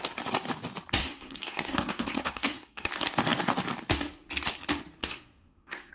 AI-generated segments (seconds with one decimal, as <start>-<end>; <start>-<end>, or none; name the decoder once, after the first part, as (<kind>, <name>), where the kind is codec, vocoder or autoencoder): 1.0-2.9 (codec, SNAC); 5.0-5.9